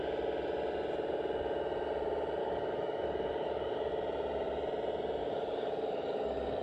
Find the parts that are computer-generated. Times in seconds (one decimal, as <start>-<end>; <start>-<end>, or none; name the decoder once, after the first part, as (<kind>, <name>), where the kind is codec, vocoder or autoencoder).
2.4-3.9 (codec, DAC); 5.2-6.6